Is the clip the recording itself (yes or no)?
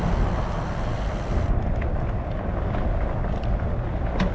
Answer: yes